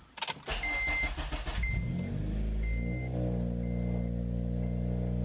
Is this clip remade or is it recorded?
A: recorded